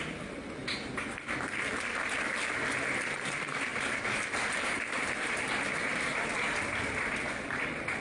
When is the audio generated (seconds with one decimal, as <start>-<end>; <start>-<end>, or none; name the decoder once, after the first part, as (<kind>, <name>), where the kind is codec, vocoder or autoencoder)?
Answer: 0.0-0.4 (vocoder, BigVGAN v2); 2.5-8.0